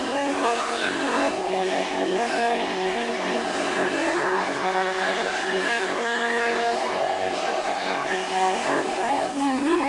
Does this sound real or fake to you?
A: fake